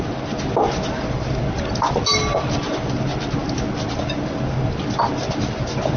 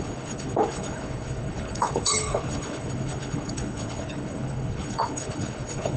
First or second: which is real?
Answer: first